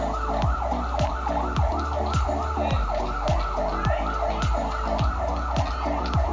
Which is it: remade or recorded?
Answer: recorded